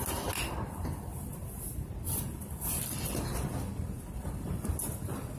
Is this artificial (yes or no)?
no